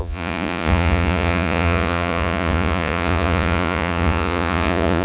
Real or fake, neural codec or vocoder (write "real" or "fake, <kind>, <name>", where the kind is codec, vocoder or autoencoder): fake, vocoder, Vocos